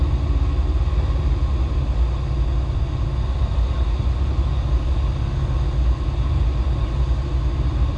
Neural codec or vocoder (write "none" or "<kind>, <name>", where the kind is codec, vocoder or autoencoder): none